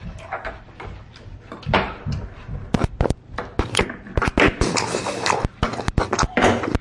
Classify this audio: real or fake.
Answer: real